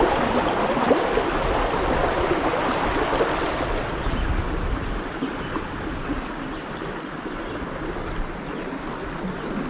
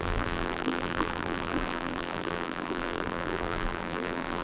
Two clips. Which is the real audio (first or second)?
first